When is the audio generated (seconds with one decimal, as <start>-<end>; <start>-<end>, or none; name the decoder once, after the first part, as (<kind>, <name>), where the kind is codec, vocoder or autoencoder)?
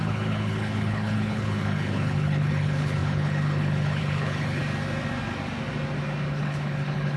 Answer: 0.0-4.6 (codec, HILCodec); 6.3-7.2